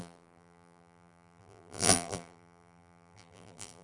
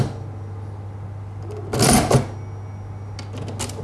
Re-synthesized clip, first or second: first